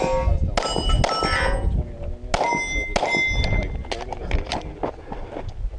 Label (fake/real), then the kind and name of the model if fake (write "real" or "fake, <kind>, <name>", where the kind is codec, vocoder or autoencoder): real